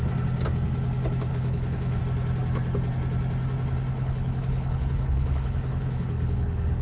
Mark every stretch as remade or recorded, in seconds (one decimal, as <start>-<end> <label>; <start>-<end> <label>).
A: 0.0-1.3 recorded; 1.3-2.0 remade; 2.0-3.9 recorded; 3.9-6.8 remade